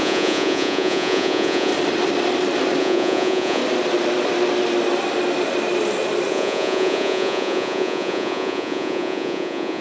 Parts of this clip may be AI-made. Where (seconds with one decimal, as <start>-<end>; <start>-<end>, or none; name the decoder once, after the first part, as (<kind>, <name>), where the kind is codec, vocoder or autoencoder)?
0.0-1.7 (vocoder, Vocos); 2.8-3.6; 6.3-9.8